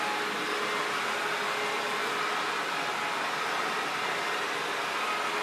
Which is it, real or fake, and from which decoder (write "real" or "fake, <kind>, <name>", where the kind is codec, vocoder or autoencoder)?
real